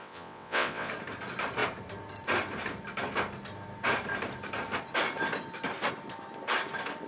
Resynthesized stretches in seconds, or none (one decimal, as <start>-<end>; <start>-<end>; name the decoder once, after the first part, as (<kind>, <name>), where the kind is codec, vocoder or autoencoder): 0.0-0.9 (vocoder, WaveNeXt)